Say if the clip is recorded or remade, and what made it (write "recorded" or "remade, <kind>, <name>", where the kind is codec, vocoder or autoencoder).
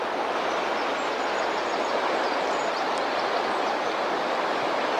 recorded